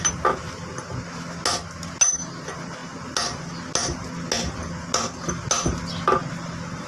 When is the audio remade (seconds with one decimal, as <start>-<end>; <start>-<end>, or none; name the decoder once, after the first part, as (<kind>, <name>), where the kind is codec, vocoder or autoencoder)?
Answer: none